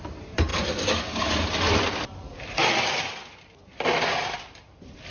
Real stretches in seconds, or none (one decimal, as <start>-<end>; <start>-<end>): 0.0-5.1